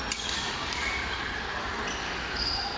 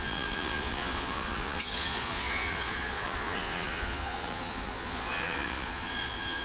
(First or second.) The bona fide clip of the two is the first